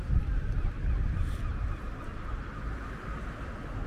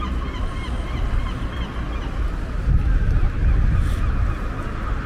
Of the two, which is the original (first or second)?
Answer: second